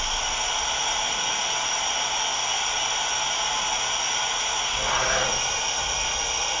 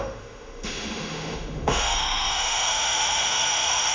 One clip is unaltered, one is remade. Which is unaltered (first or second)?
first